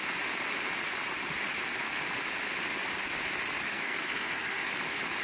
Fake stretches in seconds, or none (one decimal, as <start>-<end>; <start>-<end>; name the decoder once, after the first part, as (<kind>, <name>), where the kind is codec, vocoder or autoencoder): 3.7-4.7 (codec, SNAC)